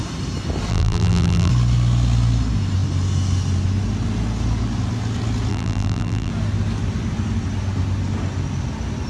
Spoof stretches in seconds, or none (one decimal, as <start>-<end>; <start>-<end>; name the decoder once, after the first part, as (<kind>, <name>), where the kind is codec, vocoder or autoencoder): 0.7-1.5 (vocoder, BigVGAN v2); 5.5-6.3

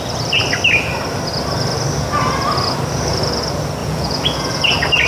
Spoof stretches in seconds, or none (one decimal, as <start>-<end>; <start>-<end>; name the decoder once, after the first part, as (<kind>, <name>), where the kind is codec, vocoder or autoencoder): 3.8-4.6 (vocoder, Vocos)

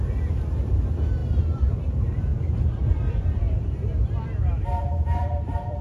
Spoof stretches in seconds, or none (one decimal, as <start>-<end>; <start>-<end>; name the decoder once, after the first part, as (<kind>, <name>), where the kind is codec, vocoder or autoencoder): 1.2-1.9 (vocoder, BigVGAN v2); 2.3-5.8

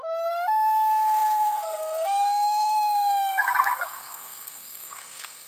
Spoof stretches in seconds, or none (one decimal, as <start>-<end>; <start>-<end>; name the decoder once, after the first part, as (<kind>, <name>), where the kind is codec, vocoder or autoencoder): 0.0-5.5 (codec, SNAC)

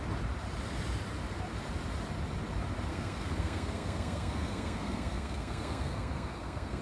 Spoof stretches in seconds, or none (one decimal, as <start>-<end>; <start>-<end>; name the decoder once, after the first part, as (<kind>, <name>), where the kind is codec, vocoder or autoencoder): 2.9-6.8 (codec, SNAC)

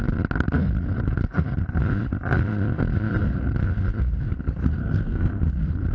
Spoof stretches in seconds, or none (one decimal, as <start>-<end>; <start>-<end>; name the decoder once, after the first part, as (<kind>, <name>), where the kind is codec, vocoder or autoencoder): 4.8-5.5 (codec, SNAC)

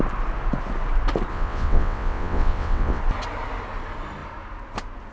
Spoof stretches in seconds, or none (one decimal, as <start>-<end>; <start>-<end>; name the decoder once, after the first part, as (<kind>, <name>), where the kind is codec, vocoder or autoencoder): 1.3-3.0 (vocoder, WaveNeXt)

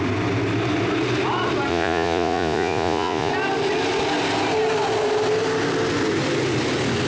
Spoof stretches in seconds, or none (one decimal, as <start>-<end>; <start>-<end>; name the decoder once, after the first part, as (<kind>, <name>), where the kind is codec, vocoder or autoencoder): 1.7-3.3 (vocoder, Vocos)